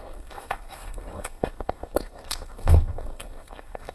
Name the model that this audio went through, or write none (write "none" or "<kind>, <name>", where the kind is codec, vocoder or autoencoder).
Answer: codec, SNAC